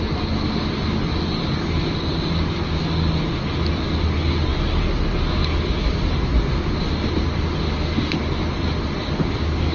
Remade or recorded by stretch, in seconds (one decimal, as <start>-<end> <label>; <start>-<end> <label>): 0.0-9.7 recorded